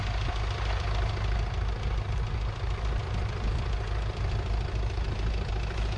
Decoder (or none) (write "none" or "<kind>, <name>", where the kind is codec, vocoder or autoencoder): none